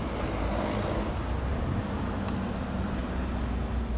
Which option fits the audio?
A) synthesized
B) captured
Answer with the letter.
B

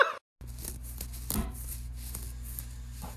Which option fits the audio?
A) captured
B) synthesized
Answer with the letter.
A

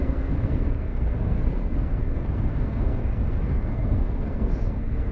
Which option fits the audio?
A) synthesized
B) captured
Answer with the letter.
A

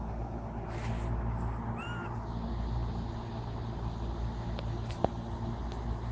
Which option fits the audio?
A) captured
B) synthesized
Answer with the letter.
A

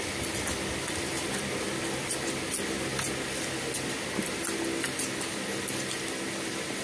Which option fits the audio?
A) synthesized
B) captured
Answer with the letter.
B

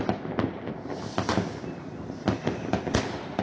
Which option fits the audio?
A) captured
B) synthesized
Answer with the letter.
A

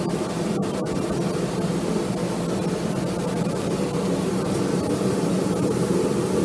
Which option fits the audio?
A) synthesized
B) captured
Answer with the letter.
B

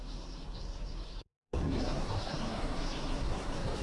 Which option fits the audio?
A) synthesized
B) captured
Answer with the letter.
A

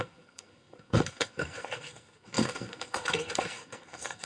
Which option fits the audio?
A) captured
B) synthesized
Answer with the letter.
B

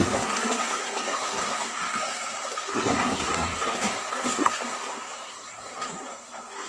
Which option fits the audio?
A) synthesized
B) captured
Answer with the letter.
A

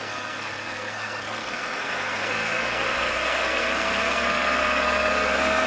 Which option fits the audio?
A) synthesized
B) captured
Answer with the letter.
A